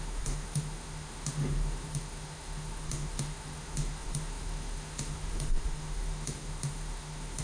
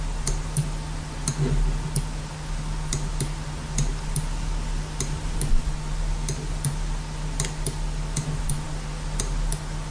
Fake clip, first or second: first